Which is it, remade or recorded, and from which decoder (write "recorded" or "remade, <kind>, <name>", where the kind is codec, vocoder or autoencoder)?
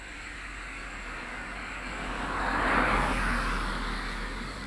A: remade, codec, DAC